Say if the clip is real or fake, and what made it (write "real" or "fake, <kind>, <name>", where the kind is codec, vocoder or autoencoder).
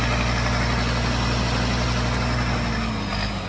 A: real